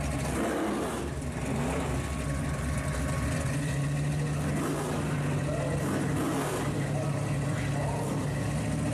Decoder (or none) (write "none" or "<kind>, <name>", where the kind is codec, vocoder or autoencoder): none